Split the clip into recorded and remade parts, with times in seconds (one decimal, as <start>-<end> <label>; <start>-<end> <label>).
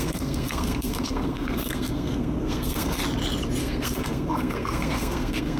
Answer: 0.0-3.0 remade; 3.0-3.6 recorded; 3.6-5.6 remade